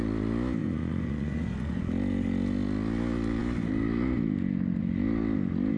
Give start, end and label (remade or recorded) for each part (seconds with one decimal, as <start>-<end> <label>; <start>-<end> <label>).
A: 0.0-0.6 recorded; 0.6-1.8 remade; 1.8-5.8 recorded

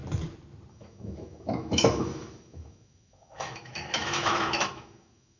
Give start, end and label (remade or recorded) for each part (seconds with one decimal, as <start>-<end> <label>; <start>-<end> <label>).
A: 0.0-0.7 recorded; 0.7-5.4 remade

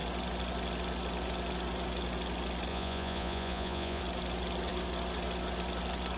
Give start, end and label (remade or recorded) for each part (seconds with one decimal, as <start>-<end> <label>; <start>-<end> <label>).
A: 0.0-2.7 recorded; 2.7-4.0 remade; 4.0-6.2 recorded

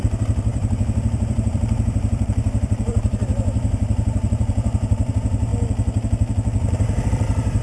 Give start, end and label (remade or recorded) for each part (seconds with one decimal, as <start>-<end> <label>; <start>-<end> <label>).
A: 0.0-5.5 remade; 5.5-7.1 recorded; 7.1-7.6 remade

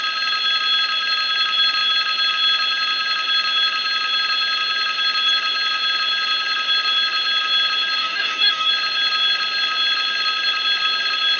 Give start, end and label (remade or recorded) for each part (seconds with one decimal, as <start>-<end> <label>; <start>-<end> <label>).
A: 0.0-8.0 recorded; 8.0-8.7 remade; 8.7-11.4 recorded

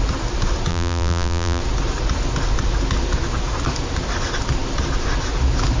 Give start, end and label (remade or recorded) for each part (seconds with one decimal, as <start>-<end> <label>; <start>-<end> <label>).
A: 0.0-0.7 recorded; 0.7-1.6 remade; 1.6-5.8 recorded